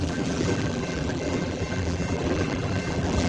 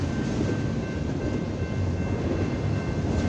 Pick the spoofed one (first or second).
first